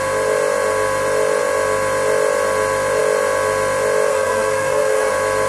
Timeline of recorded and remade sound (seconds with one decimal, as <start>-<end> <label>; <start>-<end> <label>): 0.0-4.1 recorded; 4.1-5.1 remade; 5.1-5.5 recorded